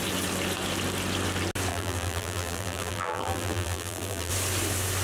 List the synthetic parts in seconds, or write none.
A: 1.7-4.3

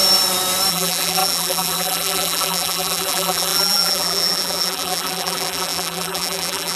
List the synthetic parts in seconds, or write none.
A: 0.7-6.8

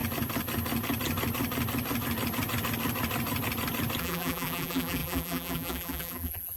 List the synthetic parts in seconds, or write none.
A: 4.0-6.6

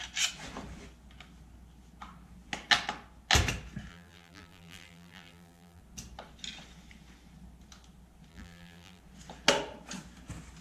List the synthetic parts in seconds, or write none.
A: 3.9-5.8; 8.3-9.0

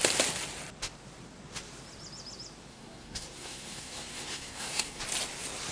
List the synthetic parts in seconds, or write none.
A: 2.7-5.0

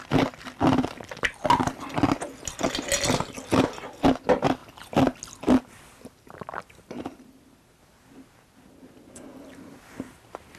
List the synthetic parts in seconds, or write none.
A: none

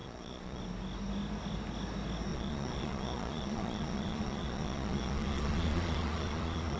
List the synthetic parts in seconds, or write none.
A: 0.0-0.6; 2.3-6.8